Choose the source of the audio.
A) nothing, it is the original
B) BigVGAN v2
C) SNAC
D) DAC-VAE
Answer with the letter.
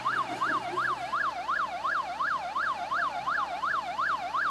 A